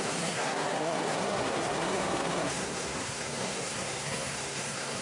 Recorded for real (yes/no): no